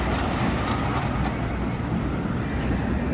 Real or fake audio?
real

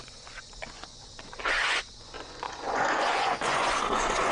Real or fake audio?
fake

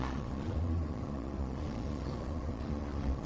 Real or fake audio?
fake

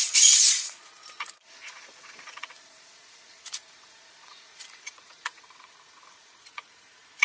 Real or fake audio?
fake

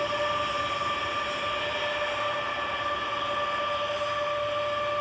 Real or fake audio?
real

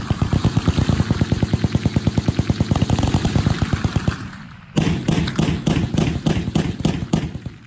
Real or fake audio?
real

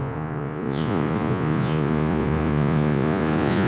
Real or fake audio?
fake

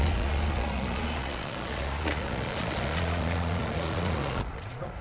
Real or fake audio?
fake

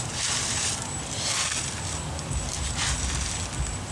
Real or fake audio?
real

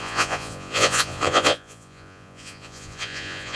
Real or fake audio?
fake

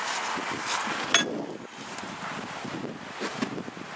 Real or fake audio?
real